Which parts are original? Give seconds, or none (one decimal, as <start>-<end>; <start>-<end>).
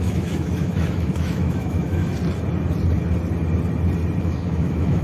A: 2.0-4.2